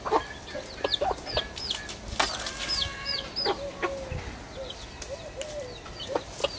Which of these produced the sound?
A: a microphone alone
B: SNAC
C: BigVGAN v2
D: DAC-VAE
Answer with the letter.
A